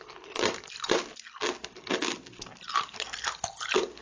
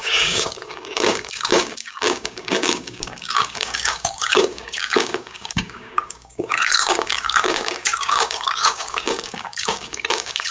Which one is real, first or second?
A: first